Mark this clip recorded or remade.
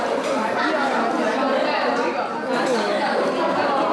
recorded